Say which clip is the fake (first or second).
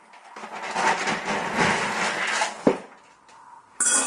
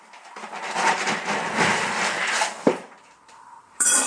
second